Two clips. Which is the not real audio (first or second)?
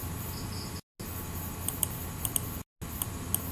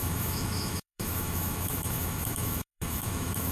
second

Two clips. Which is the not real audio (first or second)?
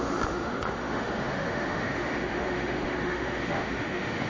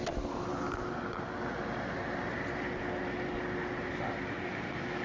first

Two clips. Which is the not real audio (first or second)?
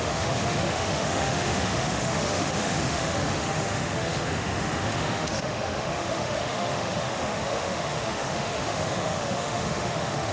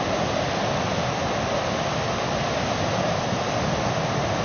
first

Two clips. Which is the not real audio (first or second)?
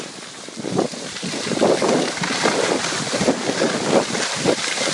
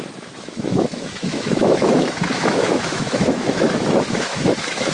second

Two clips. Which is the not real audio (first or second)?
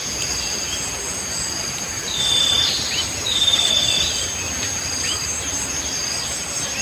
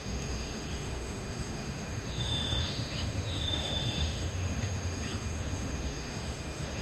second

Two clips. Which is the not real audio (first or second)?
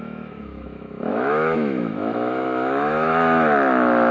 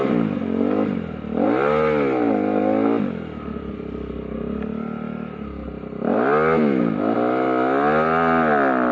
first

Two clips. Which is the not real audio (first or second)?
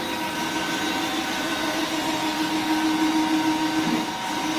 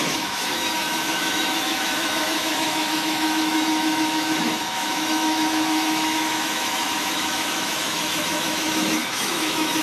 second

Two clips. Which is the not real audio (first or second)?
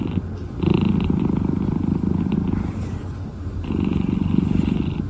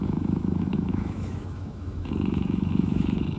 second